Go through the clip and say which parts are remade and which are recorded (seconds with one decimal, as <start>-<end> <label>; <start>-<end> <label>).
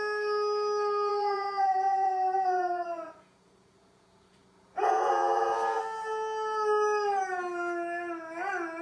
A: 0.0-1.1 recorded; 1.1-5.8 remade; 5.8-8.8 recorded